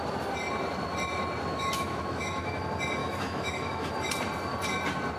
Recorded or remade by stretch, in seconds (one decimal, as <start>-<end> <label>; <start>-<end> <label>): 0.0-1.5 recorded; 1.5-2.6 remade; 2.6-3.0 recorded; 3.0-3.9 remade; 3.9-5.2 recorded